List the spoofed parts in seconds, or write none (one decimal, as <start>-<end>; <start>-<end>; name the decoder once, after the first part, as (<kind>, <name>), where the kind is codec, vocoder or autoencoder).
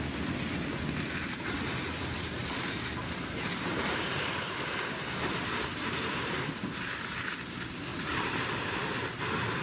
2.4-7.4 (vocoder, BigVGAN v2); 7.9-8.8